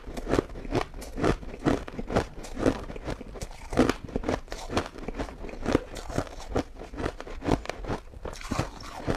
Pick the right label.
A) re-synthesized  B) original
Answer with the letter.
B